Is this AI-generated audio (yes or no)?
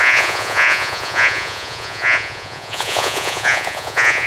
yes